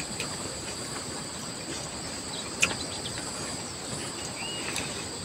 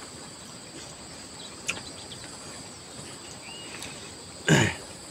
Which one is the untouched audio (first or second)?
first